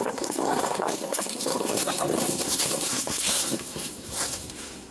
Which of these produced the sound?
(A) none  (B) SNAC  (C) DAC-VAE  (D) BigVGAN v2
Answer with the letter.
B